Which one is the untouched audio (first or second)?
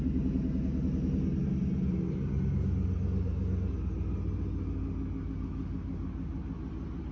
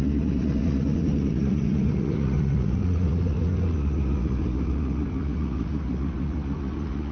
first